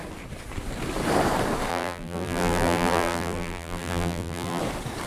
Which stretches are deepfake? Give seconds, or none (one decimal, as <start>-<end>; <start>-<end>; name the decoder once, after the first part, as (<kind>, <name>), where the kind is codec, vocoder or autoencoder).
1.7-4.6 (vocoder, BigVGAN v2)